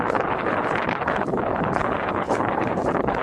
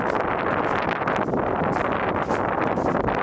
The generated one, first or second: first